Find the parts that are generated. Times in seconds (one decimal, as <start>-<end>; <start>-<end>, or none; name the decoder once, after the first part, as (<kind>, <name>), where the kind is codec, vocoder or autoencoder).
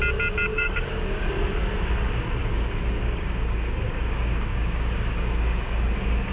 0.5-1.3 (codec, DAC); 2.4-6.3